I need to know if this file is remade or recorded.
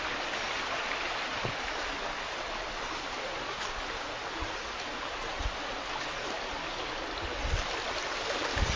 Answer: recorded